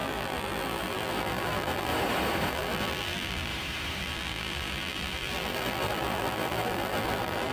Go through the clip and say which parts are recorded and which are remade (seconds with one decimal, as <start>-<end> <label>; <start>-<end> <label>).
0.0-1.9 remade; 1.9-2.5 recorded; 2.5-3.5 remade; 3.5-4.0 recorded; 4.0-7.5 remade